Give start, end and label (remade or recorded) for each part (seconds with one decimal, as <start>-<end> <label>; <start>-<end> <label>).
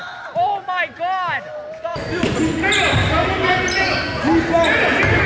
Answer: 0.0-1.9 recorded; 1.9-2.4 remade; 2.4-5.3 recorded